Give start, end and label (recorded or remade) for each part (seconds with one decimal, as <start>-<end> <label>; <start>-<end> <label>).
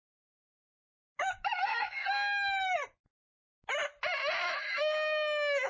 0.0-2.0 remade; 2.0-4.5 recorded; 4.5-5.7 remade